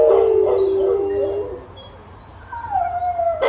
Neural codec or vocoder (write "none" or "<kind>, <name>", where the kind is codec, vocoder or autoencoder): none